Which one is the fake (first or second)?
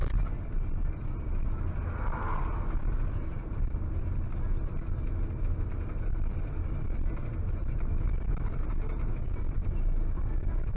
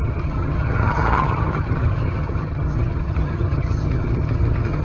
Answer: second